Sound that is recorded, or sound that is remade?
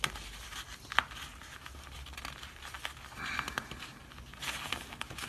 recorded